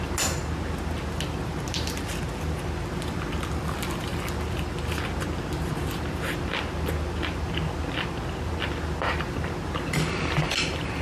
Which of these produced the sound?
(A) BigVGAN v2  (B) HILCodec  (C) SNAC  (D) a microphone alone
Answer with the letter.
D